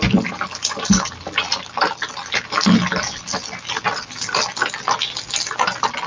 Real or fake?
real